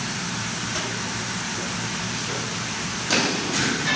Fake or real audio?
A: fake